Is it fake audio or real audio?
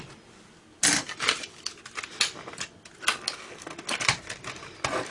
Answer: real